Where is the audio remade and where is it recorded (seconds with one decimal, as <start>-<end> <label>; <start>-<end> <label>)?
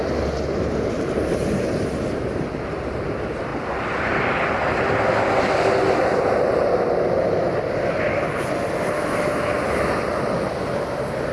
0.0-11.3 recorded